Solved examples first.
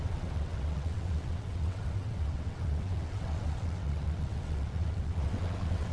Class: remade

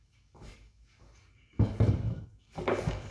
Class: remade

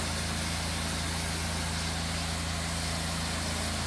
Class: recorded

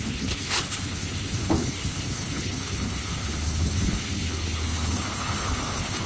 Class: remade